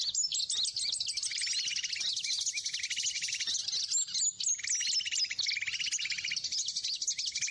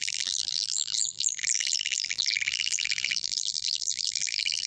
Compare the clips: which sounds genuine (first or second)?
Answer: first